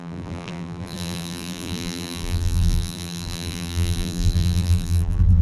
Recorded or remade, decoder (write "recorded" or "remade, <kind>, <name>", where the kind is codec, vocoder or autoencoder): remade, vocoder, BigVGAN v2